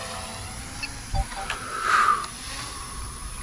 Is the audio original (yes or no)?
yes